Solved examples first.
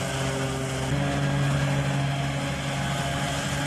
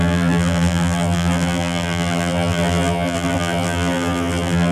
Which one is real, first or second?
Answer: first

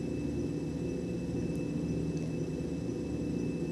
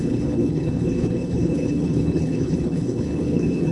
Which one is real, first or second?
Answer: first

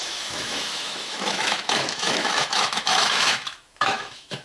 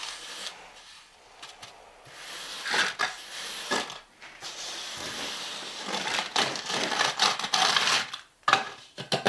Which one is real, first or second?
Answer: second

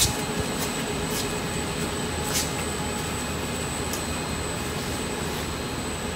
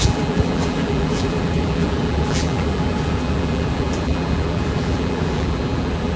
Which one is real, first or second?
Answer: first